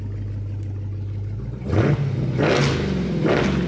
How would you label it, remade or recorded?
recorded